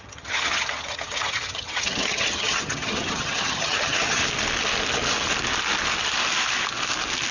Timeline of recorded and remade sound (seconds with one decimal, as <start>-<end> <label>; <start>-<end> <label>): 0.0-4.2 remade; 4.2-7.3 recorded